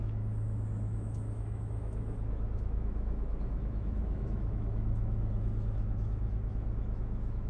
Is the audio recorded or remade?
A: remade